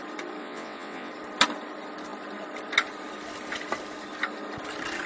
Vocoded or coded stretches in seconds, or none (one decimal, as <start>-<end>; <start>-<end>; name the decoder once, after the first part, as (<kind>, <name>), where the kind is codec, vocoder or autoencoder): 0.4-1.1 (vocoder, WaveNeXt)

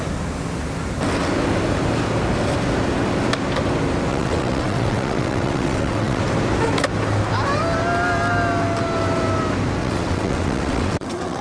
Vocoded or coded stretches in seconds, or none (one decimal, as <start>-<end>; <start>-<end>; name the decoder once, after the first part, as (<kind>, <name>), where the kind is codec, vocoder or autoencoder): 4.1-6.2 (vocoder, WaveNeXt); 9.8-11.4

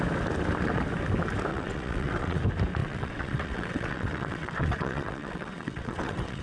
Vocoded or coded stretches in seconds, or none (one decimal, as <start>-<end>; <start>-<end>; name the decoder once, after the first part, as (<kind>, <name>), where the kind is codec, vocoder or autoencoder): 1.5-2.4 (vocoder, WaveNeXt); 2.8-6.4